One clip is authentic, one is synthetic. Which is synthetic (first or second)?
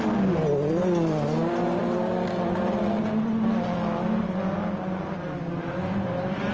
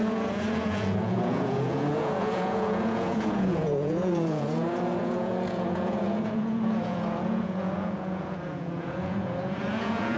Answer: second